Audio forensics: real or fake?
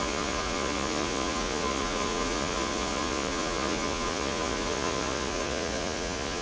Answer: fake